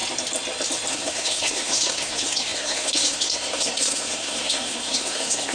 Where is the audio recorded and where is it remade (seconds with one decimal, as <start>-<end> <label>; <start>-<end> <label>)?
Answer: 0.0-0.9 recorded; 0.9-5.5 remade